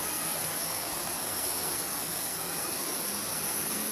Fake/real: fake